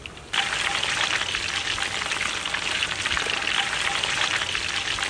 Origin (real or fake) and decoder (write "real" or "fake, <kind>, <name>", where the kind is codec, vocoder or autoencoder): real